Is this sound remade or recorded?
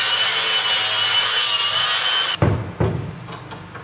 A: recorded